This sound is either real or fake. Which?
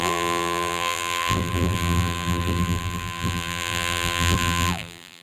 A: fake